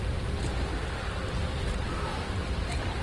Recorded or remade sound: recorded